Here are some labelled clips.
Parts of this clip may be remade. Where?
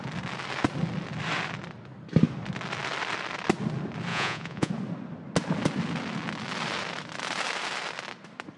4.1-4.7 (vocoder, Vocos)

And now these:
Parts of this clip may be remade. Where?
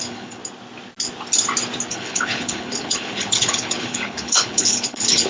0.0-0.4 (codec, HILCodec); 1.9-5.3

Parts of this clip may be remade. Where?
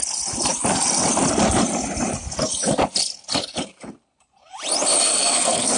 5.1-5.8 (codec, SNAC)